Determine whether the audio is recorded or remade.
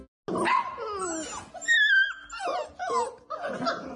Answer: recorded